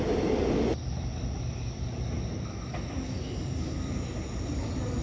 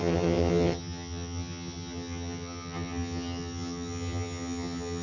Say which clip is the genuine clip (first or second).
first